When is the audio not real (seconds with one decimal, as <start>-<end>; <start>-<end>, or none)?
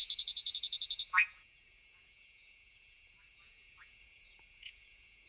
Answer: 0.0-5.3